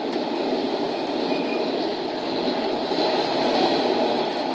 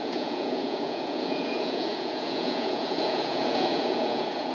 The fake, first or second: second